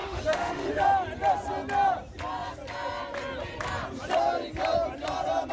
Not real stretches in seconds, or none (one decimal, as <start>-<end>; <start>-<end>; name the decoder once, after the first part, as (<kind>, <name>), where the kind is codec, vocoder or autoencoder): 0.0-0.8 (autoencoder, DAC-VAE)